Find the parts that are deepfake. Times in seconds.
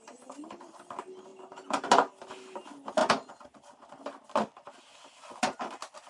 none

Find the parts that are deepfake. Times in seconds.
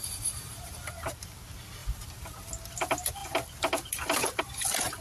0.0-0.7 (vocoder, BigVGAN v2); 1.8-2.5